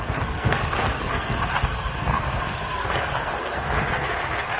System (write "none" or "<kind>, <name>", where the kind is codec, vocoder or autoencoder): codec, SNAC